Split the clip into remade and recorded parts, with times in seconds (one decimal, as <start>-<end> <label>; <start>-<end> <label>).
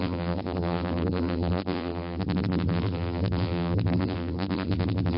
0.0-5.2 remade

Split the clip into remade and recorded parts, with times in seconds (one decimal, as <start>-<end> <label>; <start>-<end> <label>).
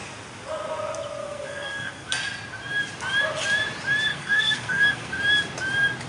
0.0-1.2 recorded; 1.2-2.1 remade; 2.1-4.1 recorded; 4.1-5.2 remade; 5.2-6.1 recorded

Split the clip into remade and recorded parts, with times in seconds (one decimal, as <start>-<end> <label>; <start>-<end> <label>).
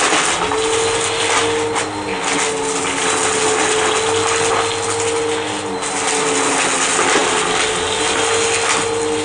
0.0-9.2 recorded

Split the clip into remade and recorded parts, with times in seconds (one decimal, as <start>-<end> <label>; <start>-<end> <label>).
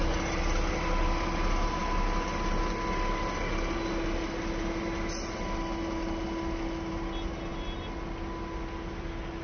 0.0-9.4 recorded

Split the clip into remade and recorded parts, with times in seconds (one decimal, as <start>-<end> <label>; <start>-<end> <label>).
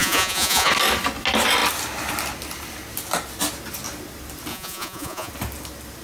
0.0-0.7 remade; 0.7-4.5 recorded; 4.5-5.3 remade; 5.3-6.0 recorded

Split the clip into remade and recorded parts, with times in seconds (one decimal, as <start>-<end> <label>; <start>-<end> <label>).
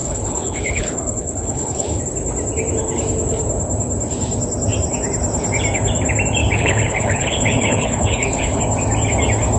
0.0-2.0 remade; 2.0-6.4 recorded; 6.4-8.6 remade; 8.6-9.6 recorded